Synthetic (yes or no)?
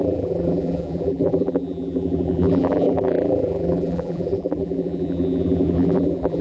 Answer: yes